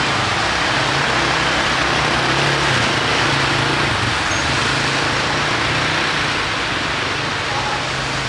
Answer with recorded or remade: recorded